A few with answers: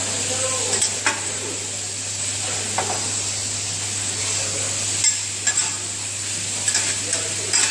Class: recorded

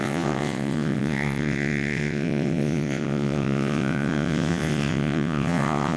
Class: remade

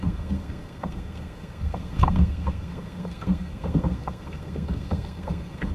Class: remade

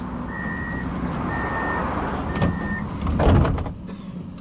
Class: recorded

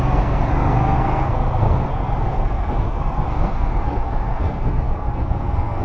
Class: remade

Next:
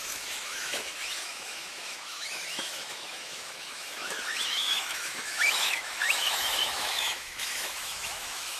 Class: remade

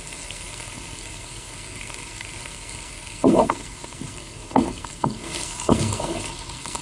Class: remade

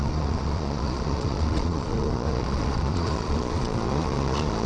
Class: remade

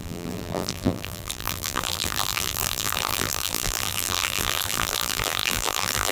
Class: remade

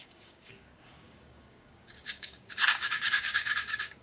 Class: remade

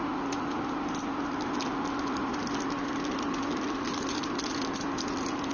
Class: recorded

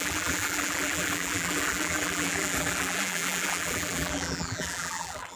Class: remade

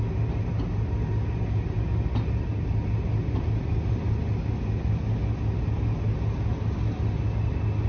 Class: recorded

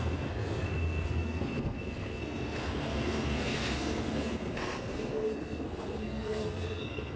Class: remade